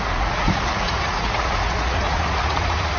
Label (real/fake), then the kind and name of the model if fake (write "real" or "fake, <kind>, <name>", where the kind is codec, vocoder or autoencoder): fake, vocoder, Vocos